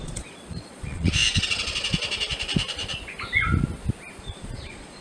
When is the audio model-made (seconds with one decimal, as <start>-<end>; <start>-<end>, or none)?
0.0-1.2; 4.2-5.0